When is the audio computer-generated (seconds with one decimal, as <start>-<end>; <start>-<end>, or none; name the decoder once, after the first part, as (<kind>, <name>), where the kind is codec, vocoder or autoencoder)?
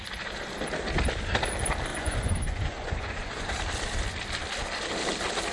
1.9-3.6 (vocoder, Vocos)